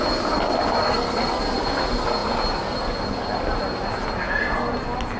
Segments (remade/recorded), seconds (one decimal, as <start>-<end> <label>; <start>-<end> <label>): 0.0-0.8 recorded; 0.8-1.4 remade; 1.4-5.2 recorded